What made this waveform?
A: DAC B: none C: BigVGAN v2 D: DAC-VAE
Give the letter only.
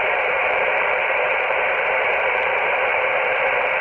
C